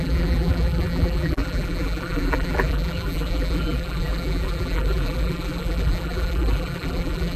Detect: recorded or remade remade